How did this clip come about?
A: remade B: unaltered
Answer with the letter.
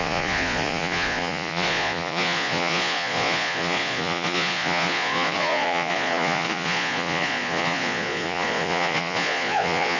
A